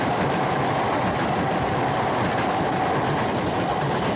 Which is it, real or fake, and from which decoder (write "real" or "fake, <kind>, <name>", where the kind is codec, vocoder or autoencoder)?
real